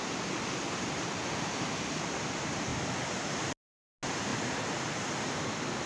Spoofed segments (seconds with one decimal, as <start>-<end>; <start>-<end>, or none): none